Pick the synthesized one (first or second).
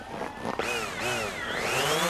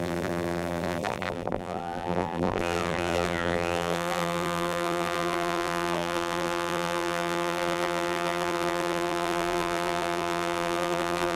second